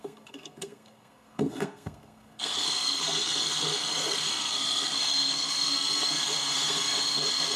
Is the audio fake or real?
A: fake